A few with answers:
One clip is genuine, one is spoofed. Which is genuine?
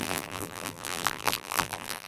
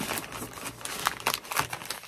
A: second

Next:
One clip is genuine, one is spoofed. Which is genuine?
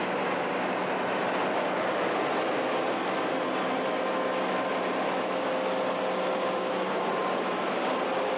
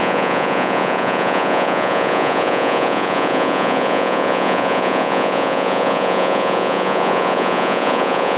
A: first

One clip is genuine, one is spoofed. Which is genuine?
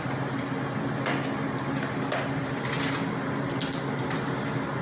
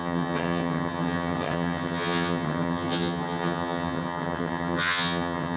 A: first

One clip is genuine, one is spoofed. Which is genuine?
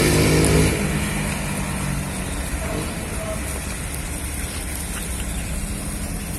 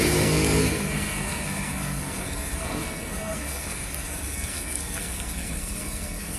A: first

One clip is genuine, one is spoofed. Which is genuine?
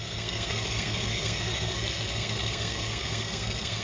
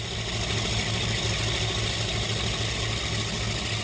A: second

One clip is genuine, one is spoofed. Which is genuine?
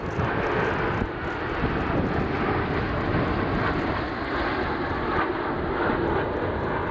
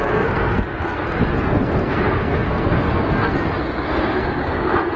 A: first